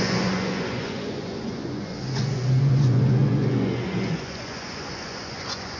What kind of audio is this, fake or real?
fake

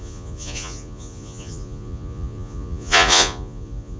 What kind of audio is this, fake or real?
fake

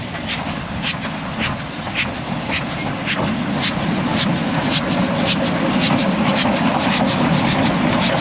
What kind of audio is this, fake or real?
real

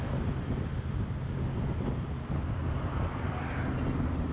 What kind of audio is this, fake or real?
real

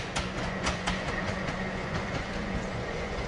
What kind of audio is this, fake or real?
fake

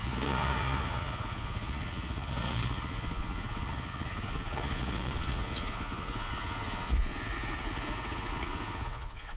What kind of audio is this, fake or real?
fake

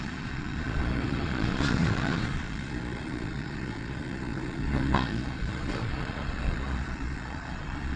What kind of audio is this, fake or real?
fake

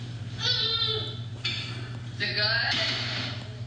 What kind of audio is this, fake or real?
real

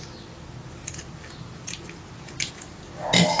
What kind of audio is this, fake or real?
real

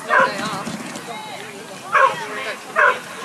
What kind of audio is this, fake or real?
real